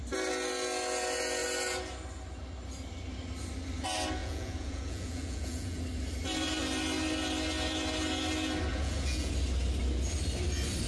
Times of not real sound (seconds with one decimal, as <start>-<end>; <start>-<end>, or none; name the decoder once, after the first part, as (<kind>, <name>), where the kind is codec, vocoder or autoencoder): 4.2-5.8 (vocoder, Vocos); 8.7-9.3